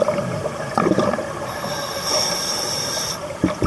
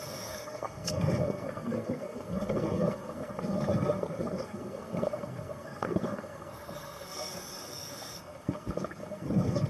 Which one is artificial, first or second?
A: second